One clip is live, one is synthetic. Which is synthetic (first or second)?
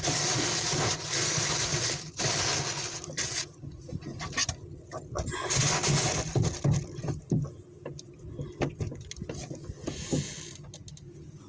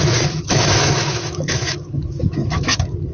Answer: second